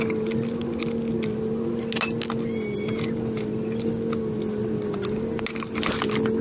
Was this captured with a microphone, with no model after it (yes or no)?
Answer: yes